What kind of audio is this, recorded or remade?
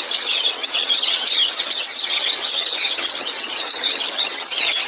remade